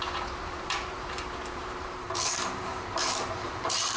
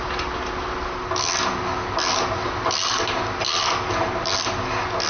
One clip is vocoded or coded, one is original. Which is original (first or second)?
second